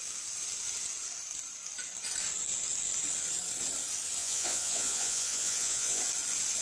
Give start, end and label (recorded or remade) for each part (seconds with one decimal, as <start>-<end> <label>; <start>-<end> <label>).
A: 0.0-4.2 recorded; 4.2-6.0 remade; 6.0-6.6 recorded